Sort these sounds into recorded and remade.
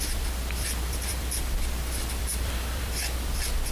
remade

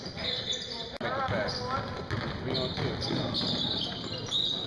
recorded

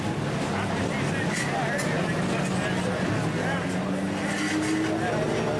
recorded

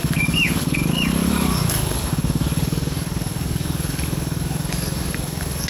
remade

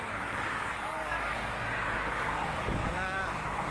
remade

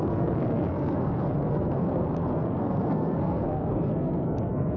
remade